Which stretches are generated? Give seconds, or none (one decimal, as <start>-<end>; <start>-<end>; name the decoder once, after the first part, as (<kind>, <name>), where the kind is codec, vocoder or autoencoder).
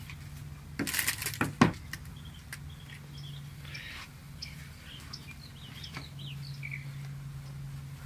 none